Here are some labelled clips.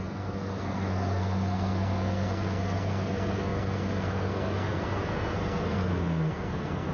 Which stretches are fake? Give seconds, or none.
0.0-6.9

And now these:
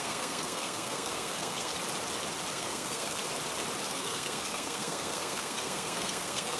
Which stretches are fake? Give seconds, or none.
0.0-1.7; 2.5-3.2; 3.9-6.6

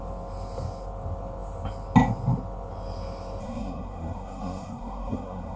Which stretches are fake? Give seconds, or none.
3.4-5.6

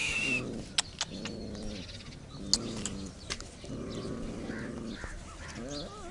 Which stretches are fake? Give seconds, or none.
none

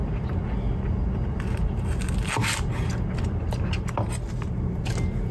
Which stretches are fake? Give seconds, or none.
none